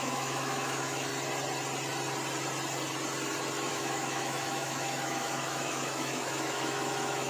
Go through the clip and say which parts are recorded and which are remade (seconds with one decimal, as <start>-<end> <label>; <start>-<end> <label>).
0.0-1.1 remade; 1.1-3.7 recorded; 3.7-7.3 remade